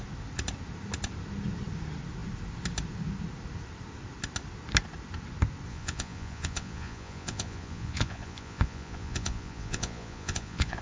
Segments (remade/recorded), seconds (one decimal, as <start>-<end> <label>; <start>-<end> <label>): 0.0-5.7 recorded; 5.7-10.8 remade